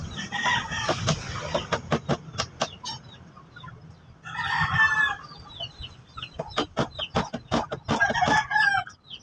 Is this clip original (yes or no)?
yes